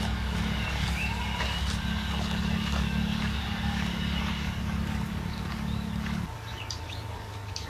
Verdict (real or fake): fake